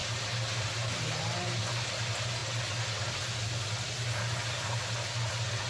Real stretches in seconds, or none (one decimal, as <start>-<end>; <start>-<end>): 0.0-5.7